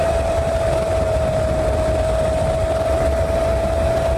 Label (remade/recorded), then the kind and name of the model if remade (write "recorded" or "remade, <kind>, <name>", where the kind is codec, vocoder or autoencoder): recorded